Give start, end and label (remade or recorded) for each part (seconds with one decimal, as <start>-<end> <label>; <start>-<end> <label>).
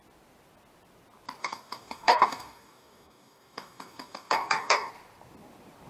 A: 0.0-1.4 recorded; 1.4-4.9 remade; 4.9-5.9 recorded